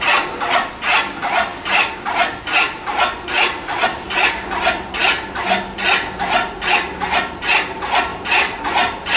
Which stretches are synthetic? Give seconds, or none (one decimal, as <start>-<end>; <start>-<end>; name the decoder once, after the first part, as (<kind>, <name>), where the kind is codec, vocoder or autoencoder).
none